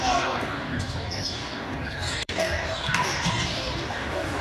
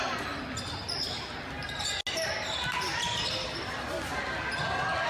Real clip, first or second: second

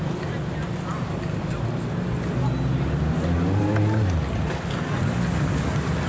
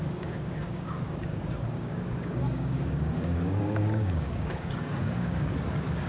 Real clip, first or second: first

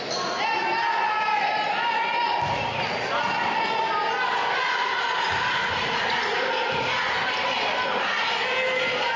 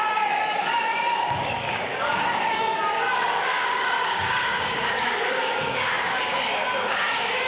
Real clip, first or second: first